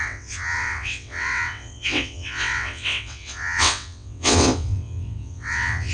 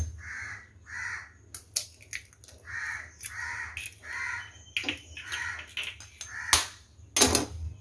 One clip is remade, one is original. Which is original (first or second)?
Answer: second